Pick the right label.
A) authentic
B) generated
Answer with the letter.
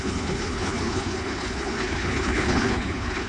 B